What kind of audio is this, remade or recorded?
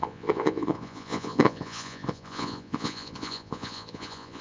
remade